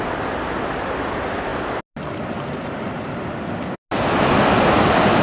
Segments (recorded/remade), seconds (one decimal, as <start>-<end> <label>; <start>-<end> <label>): 0.0-5.2 recorded

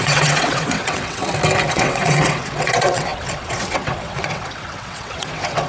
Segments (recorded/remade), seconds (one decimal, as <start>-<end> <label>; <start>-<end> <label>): 0.0-1.2 remade; 1.2-1.7 recorded; 1.7-5.7 remade

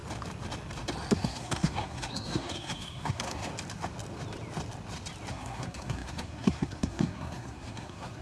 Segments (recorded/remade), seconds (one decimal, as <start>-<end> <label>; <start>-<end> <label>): 0.0-1.1 recorded; 1.1-3.5 remade; 3.5-5.3 recorded; 5.3-8.2 remade

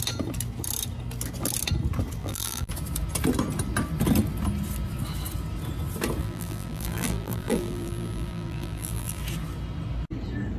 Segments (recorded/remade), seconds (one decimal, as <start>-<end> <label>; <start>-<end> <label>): 0.0-2.2 recorded; 2.2-2.7 remade; 2.7-6.2 recorded; 6.2-9.2 remade; 9.2-10.6 recorded

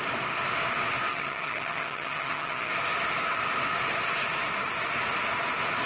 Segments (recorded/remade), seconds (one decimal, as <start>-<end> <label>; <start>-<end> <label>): 0.0-1.1 recorded; 1.1-2.7 remade; 2.7-5.9 recorded

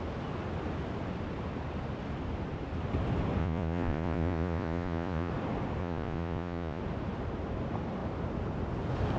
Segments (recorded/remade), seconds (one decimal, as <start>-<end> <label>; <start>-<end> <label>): 0.0-3.4 recorded; 3.4-5.3 remade; 5.3-5.8 recorded; 5.8-6.8 remade; 6.8-9.2 recorded